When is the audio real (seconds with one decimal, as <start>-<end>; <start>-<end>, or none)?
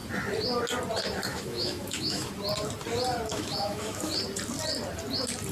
0.0-1.3; 2.3-3.3; 4.1-5.5